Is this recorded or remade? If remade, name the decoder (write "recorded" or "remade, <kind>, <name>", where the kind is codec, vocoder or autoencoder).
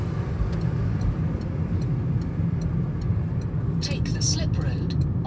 recorded